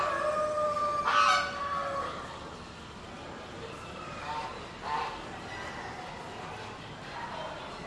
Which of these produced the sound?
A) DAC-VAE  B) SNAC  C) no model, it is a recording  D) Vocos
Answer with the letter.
C